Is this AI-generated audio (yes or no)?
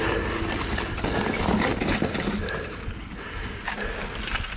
no